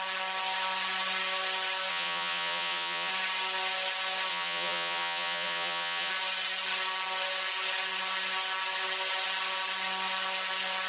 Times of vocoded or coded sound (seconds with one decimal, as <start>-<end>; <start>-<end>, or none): 1.9-3.1; 4.3-6.1